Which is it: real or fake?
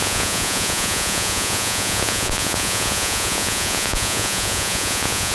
fake